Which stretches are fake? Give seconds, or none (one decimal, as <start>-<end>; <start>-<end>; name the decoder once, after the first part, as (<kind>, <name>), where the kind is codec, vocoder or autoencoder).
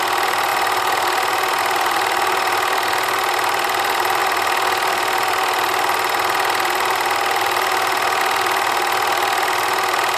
none